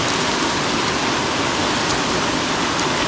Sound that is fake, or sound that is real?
real